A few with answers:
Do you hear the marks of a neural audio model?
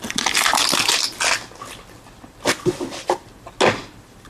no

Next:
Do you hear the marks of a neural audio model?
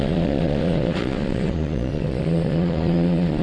yes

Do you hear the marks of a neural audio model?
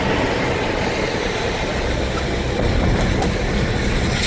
no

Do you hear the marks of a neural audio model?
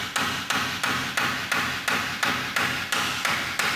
no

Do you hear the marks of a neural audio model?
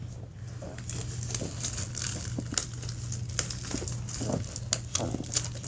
no